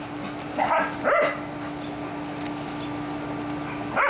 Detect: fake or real real